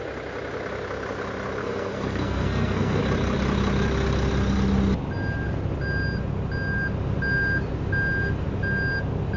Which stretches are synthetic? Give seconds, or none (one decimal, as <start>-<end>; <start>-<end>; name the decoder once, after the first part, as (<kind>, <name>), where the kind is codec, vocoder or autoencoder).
1.6-3.0 (codec, SNAC)